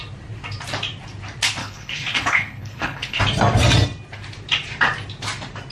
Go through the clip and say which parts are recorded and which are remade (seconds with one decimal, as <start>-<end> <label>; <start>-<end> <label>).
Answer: 0.0-1.6 recorded; 1.6-3.2 remade; 3.2-5.7 recorded